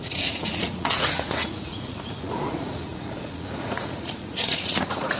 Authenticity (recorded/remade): remade